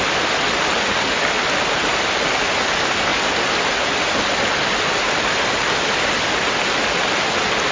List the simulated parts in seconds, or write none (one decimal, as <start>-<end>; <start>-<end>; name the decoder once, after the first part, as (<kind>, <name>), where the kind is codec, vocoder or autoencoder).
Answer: none